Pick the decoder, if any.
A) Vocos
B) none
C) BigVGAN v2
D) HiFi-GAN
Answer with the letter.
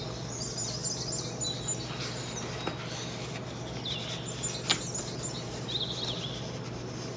B